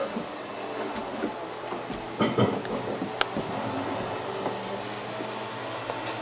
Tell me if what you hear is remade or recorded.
recorded